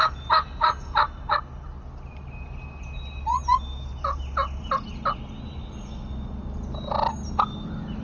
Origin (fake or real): real